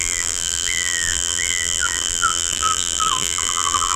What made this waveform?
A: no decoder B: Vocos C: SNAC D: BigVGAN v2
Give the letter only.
D